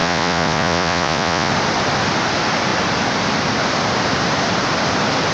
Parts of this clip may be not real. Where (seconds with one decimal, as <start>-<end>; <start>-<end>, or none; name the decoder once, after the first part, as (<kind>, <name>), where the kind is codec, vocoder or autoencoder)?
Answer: 0.0-1.5 (vocoder, Vocos)